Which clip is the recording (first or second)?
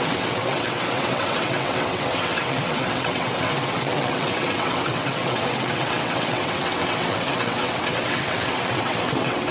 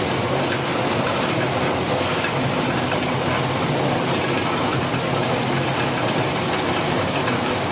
second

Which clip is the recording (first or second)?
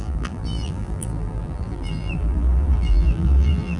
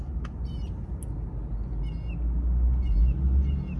second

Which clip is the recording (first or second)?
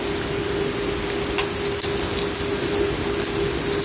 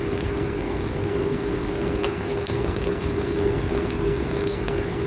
first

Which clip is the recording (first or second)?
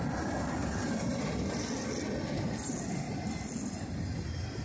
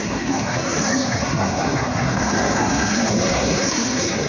first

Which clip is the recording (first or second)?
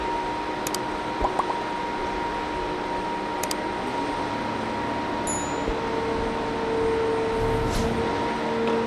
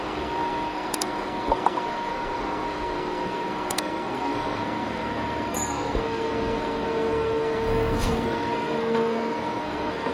first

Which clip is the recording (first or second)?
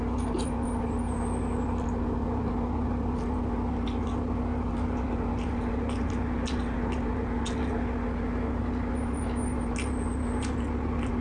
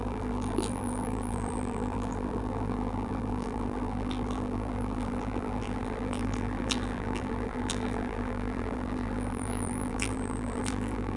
first